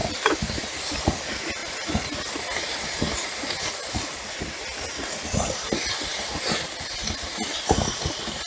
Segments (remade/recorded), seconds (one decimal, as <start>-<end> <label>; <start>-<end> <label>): 0.0-0.9 remade; 0.9-8.5 recorded